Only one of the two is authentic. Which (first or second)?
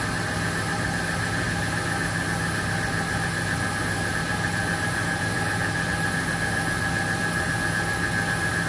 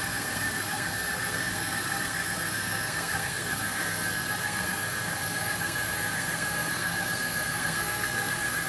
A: first